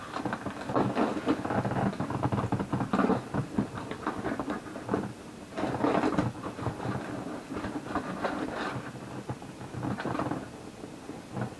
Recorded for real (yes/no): yes